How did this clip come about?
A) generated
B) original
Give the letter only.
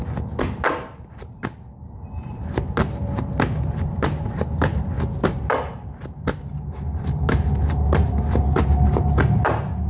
B